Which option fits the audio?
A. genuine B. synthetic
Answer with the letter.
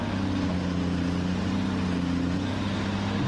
A